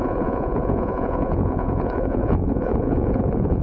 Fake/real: fake